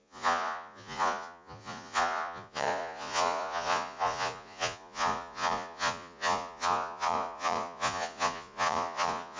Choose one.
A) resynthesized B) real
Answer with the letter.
A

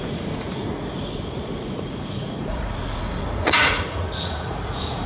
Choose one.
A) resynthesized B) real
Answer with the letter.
A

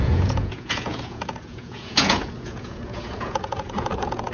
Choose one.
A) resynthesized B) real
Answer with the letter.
A